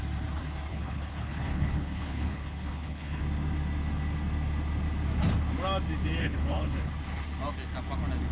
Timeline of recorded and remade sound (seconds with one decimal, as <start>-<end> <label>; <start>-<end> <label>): 0.0-0.7 recorded; 0.7-3.2 remade; 3.2-6.2 recorded; 6.2-6.9 remade; 6.9-8.3 recorded